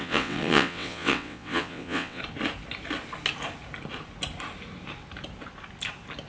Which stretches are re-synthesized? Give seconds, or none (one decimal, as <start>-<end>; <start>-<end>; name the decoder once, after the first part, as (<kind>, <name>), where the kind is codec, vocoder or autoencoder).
0.0-2.2 (vocoder, WaveNeXt)